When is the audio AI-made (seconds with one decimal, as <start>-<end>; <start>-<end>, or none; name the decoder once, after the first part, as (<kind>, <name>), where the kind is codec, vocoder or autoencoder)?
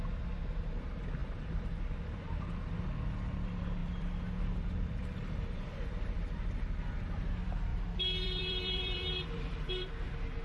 1.2-1.8 (vocoder, BigVGAN v2); 3.8-7.3; 7.7-9.7